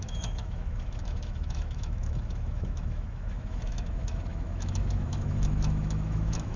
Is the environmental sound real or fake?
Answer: fake